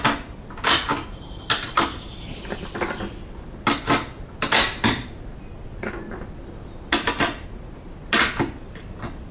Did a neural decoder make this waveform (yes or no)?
no